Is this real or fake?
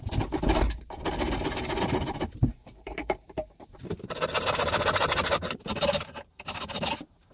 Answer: fake